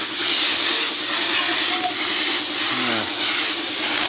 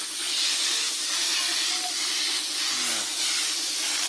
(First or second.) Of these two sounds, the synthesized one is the first